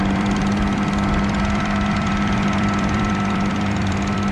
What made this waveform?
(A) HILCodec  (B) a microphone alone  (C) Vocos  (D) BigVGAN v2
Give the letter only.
D